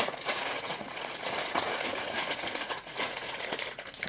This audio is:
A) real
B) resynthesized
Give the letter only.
B